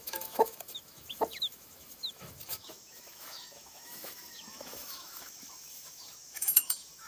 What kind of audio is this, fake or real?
fake